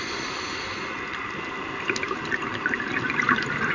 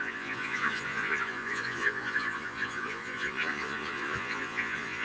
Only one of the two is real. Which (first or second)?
first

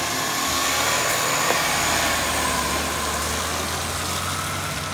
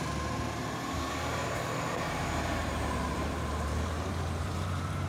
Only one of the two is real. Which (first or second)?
first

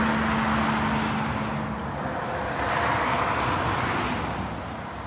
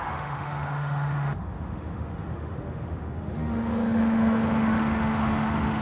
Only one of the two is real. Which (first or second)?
first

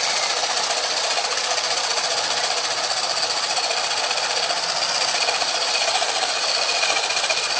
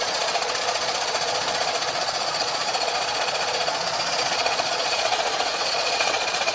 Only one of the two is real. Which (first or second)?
first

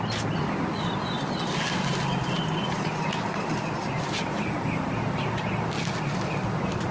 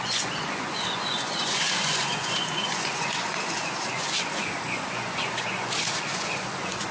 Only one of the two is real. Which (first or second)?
first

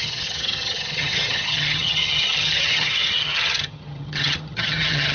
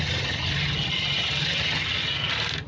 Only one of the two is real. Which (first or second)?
second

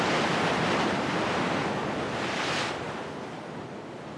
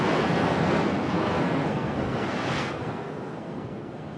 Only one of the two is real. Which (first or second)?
first